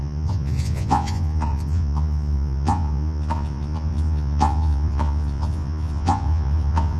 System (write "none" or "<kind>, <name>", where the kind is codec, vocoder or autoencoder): vocoder, Vocos